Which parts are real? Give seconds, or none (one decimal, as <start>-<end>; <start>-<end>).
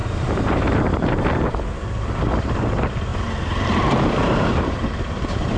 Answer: 1.6-3.1